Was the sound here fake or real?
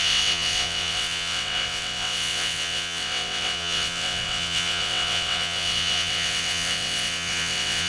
fake